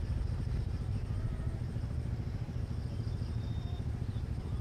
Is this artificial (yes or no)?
yes